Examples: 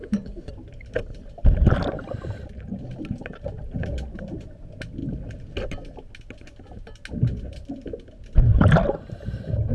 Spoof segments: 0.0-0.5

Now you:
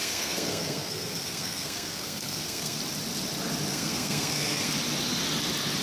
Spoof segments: 0.0-2.8; 3.7-4.7

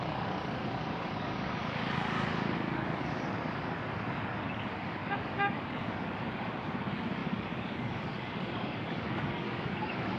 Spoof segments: 0.0-10.2

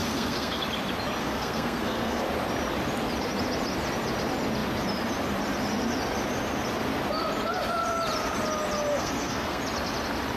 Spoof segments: 0.0-0.6; 1.2-2.2; 8.9-9.6

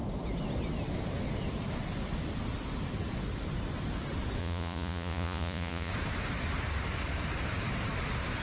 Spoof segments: 4.4-5.9

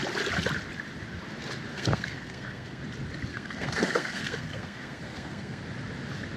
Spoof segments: 1.7-2.8; 3.3-5.6

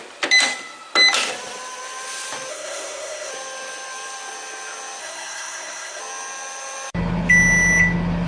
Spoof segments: 2.5-3.3; 5.0-6.0

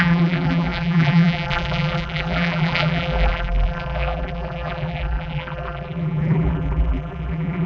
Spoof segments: 0.0-7.7